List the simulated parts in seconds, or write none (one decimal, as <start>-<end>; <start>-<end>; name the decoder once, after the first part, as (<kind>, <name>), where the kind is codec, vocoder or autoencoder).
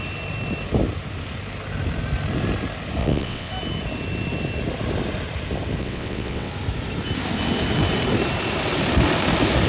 3.0-3.5 (vocoder, WaveNeXt); 5.8-6.5